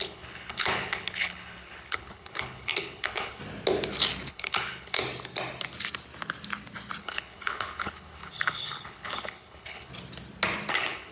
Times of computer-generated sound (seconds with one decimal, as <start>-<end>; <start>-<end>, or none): 0.0-3.4; 4.3-5.0; 7.0-9.9; 10.7-11.1